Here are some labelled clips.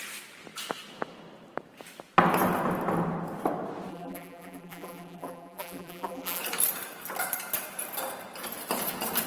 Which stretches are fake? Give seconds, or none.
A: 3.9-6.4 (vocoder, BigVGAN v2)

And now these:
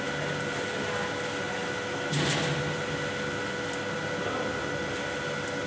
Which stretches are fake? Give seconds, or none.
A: none